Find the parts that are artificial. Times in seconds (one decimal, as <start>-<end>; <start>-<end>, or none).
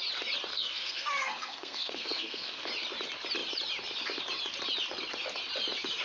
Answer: 0.5-2.7